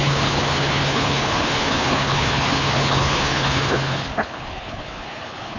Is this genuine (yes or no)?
no